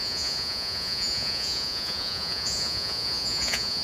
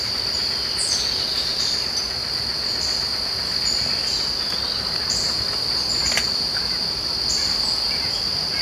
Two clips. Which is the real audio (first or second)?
second